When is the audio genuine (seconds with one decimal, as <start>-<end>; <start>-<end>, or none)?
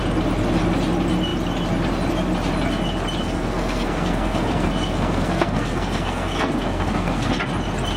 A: 0.0-3.2; 7.4-8.0